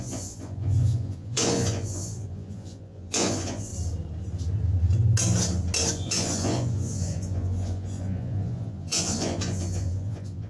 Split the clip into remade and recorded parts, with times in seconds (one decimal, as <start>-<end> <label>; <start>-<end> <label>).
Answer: 0.0-3.7 remade; 3.7-5.9 recorded; 5.9-10.5 remade